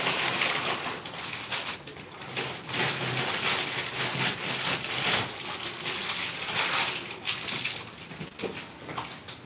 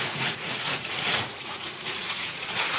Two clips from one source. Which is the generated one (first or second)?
second